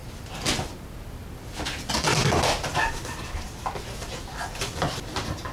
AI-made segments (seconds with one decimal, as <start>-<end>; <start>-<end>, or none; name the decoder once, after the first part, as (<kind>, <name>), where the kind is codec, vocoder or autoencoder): none